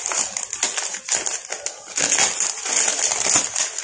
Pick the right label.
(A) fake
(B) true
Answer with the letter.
B